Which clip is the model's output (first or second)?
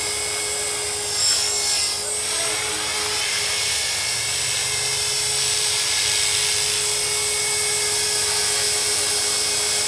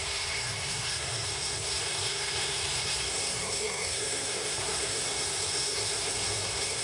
second